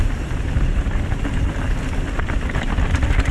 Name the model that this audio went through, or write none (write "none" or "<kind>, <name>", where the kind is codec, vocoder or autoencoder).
none